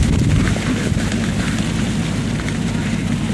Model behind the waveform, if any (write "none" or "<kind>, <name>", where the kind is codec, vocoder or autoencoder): none